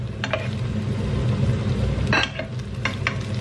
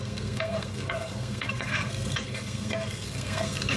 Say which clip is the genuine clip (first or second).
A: first